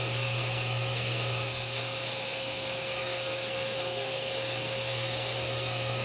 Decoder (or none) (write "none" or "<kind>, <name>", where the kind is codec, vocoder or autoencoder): codec, SNAC